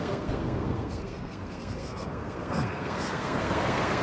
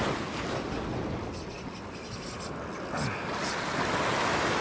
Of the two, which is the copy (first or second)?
first